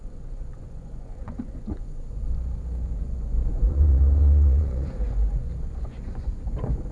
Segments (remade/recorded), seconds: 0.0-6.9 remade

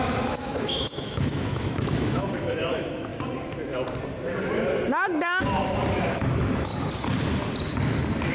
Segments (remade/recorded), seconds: 0.0-3.1 remade; 3.1-5.9 recorded; 5.9-6.7 remade; 6.7-8.3 recorded

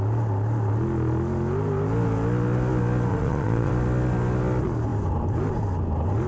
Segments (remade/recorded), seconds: 0.0-3.1 recorded; 3.1-3.7 remade; 3.7-6.3 recorded

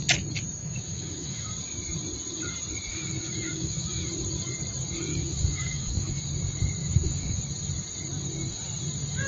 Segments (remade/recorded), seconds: 0.0-0.6 recorded; 0.6-1.4 remade; 1.4-2.9 recorded; 2.9-4.1 remade; 4.1-5.1 recorded; 5.1-6.2 remade; 6.2-6.8 recorded; 6.8-7.4 remade; 7.4-9.3 recorded

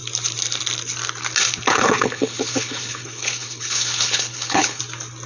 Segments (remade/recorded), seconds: 0.0-1.7 recorded; 1.7-4.8 remade; 4.8-5.3 recorded

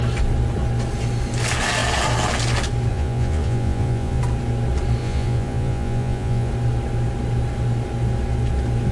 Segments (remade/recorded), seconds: 0.0-2.9 recorded; 2.9-4.2 remade; 4.2-5.0 recorded; 5.0-6.5 remade; 6.5-8.9 recorded

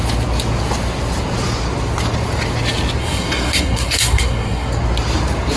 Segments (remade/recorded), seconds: 0.0-3.0 recorded; 3.0-4.7 remade; 4.7-5.6 recorded

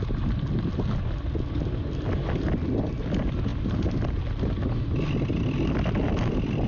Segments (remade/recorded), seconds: 0.0-6.7 recorded